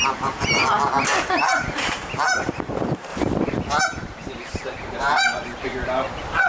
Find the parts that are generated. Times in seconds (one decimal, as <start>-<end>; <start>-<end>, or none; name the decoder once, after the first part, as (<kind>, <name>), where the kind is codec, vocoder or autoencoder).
0.0-0.6 (vocoder, BigVGAN v2); 1.2-6.5